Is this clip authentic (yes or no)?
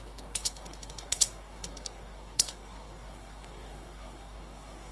no